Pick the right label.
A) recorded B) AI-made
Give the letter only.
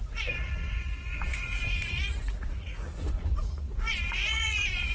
B